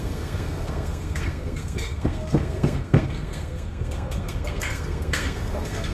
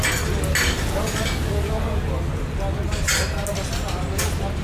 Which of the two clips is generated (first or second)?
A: first